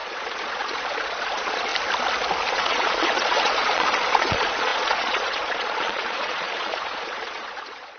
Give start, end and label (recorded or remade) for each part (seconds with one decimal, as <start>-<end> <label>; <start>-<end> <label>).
0.0-1.7 remade; 1.7-2.5 recorded; 2.5-8.0 remade